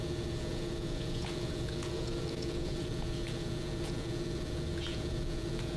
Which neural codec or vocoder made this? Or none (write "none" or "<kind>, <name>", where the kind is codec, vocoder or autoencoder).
vocoder, Vocos